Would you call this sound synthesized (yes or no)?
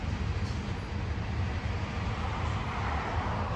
no